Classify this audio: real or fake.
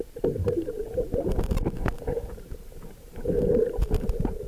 fake